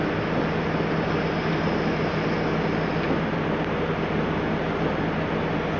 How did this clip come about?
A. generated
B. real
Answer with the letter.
B